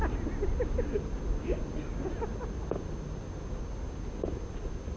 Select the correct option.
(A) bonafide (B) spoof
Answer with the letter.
A